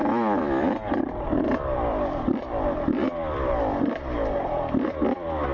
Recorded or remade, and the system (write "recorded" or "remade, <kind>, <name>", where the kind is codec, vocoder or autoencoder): remade, vocoder, BigVGAN v2